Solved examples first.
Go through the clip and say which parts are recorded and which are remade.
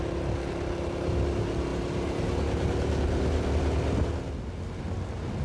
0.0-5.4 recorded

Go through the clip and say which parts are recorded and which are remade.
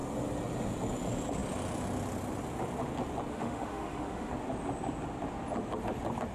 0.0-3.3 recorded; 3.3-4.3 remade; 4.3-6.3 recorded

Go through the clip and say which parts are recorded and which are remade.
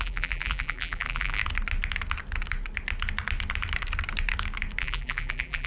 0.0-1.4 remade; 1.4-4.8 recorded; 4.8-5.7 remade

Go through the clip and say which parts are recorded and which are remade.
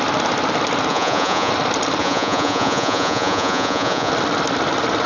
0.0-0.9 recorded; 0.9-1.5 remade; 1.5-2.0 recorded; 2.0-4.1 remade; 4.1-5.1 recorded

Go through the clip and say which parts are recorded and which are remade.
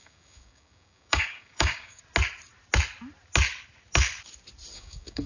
0.0-2.0 remade; 2.0-4.7 recorded; 4.7-5.3 remade